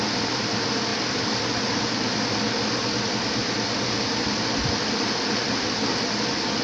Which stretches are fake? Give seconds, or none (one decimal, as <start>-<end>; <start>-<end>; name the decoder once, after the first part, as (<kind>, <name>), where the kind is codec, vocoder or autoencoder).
none